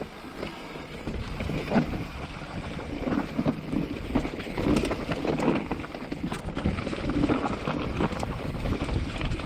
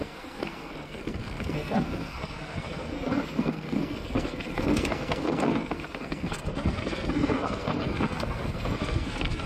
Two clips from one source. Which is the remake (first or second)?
second